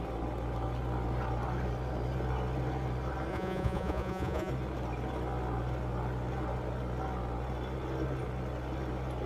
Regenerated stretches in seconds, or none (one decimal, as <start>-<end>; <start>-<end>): 3.3-4.5